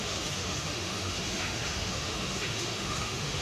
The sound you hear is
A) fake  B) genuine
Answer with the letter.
A